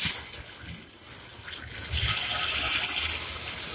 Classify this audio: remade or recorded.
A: recorded